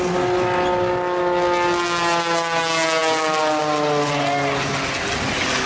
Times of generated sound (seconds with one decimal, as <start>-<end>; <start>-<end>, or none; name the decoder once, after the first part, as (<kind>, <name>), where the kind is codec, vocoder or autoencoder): none